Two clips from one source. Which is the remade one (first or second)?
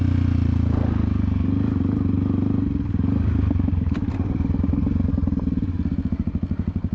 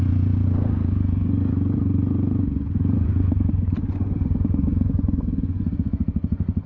second